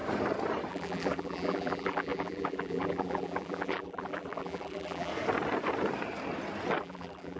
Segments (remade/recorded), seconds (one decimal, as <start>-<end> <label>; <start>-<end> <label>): 0.0-0.7 recorded; 0.7-5.1 remade; 5.1-6.8 recorded; 6.8-7.4 remade